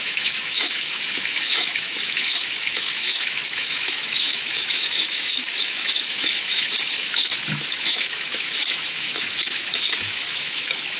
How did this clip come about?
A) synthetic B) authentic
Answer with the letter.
A